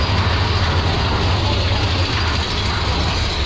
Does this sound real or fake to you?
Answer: real